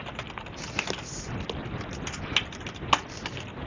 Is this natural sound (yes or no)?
yes